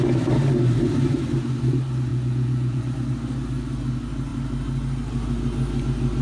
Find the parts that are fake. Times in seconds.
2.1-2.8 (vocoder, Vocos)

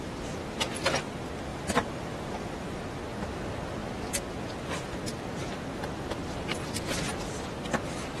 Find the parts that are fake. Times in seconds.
1.5-2.8 (vocoder, BigVGAN v2); 6.3-6.9

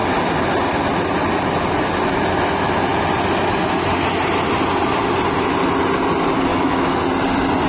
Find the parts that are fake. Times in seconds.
6.5-7.0 (autoencoder, DAC-VAE)

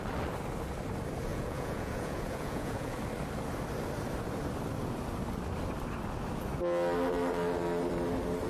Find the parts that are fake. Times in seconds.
1.3-3.0 (vocoder, Vocos)

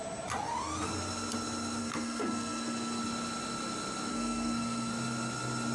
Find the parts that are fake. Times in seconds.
1.8-3.0 (codec, SNAC); 4.1-4.9

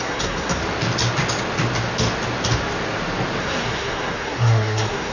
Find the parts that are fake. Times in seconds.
0.0-0.6 (codec, SNAC); 3.4-5.1

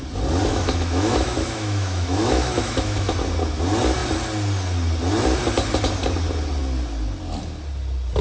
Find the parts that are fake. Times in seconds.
0.5-3.1 (autoencoder, DAC-VAE)